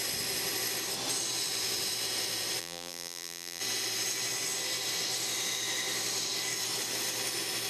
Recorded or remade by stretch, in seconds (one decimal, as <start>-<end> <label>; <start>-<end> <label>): 0.0-2.6 recorded; 2.6-3.6 remade; 3.6-7.7 recorded